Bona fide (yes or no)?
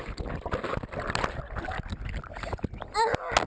yes